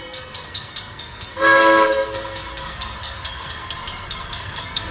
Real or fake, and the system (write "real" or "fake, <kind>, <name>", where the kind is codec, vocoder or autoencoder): fake, codec, SNAC